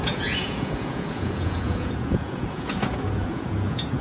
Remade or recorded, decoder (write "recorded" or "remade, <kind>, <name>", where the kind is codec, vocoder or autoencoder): remade, vocoder, Vocos